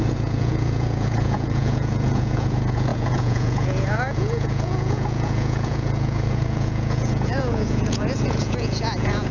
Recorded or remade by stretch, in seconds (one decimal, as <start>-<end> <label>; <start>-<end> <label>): 0.0-9.3 remade